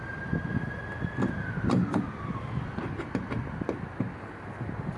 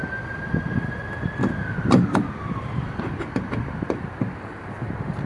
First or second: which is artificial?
second